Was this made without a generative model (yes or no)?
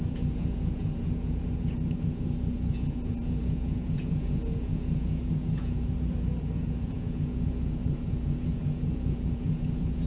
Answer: no